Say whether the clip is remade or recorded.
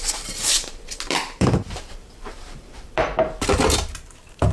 remade